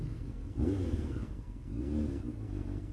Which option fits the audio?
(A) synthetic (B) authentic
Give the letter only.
A